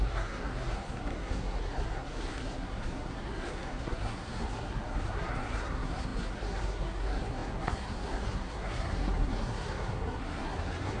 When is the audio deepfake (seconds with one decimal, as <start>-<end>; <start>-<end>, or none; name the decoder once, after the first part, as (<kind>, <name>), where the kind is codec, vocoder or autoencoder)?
0.0-11.0 (codec, SNAC)